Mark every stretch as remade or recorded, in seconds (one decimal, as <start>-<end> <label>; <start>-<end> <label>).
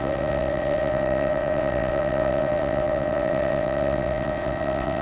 0.0-5.0 remade